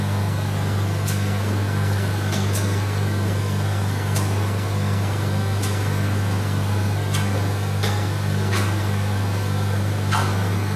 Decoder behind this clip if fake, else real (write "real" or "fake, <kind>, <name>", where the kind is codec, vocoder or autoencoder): fake, codec, SNAC